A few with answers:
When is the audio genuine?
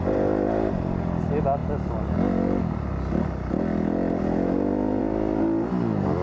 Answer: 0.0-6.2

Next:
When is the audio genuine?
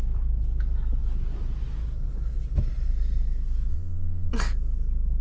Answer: 0.0-3.7; 4.3-5.2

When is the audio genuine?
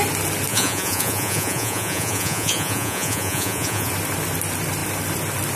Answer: 0.0-0.5; 3.9-5.6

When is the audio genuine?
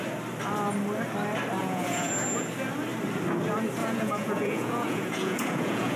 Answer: 0.0-1.6; 2.1-3.8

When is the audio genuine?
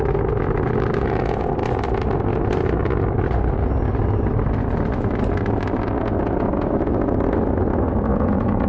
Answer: 0.0-8.1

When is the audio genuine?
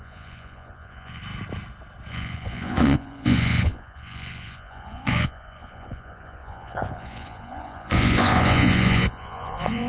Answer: 1.2-2.1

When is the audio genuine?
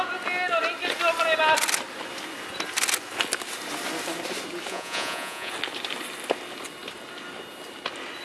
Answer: 0.0-4.7; 5.5-8.2